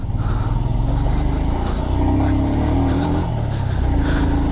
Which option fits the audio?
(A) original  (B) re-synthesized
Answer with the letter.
A